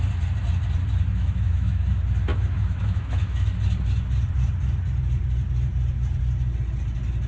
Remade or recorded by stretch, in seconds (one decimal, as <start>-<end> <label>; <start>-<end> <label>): 0.0-1.1 recorded; 1.1-1.9 remade; 1.9-2.3 recorded; 2.3-3.5 remade; 3.5-7.3 recorded